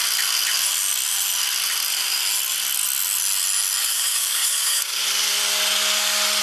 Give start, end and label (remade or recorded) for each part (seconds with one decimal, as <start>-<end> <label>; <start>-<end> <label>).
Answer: 0.0-3.8 recorded; 3.8-5.0 remade; 5.0-6.4 recorded